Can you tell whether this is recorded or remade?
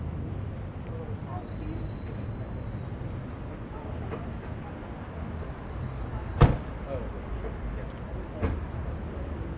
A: recorded